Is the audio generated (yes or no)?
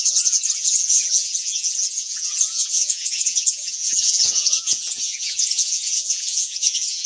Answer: yes